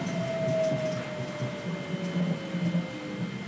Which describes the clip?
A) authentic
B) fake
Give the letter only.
A